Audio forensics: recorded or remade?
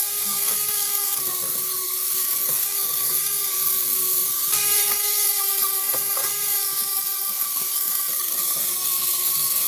remade